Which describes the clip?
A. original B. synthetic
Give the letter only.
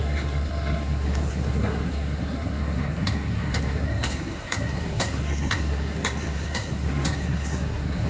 B